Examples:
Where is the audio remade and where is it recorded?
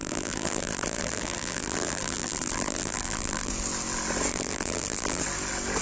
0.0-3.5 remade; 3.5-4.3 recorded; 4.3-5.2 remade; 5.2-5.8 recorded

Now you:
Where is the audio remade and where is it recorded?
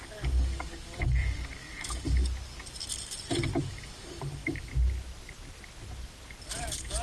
0.0-2.2 remade; 2.2-3.6 recorded; 3.6-4.7 remade; 4.7-6.6 recorded; 6.6-7.0 remade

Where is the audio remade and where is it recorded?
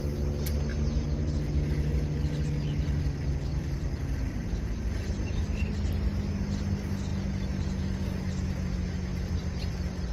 0.0-3.5 recorded; 3.5-5.7 remade; 5.7-9.1 recorded; 9.1-10.1 remade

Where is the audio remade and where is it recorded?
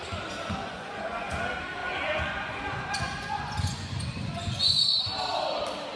0.0-0.6 recorded; 0.6-1.3 remade; 1.3-1.8 recorded; 1.8-5.0 remade; 5.0-6.0 recorded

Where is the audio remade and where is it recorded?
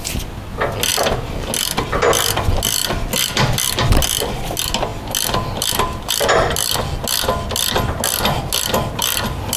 0.0-2.8 recorded; 2.8-3.5 remade; 3.5-9.6 recorded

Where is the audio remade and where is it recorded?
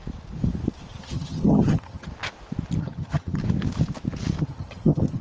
0.0-1.0 recorded; 1.0-2.1 remade; 2.1-2.8 recorded; 2.8-3.4 remade; 3.4-4.4 recorded; 4.4-5.2 remade